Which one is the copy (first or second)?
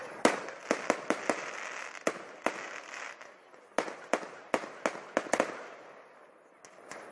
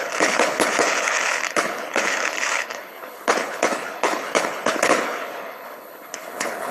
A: second